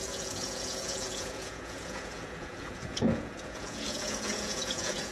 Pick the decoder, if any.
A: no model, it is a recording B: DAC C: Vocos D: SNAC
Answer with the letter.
C